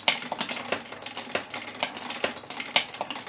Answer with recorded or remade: recorded